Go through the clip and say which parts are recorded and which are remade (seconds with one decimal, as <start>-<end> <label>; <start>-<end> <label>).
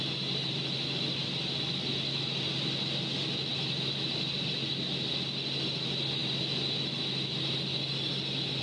0.0-8.6 recorded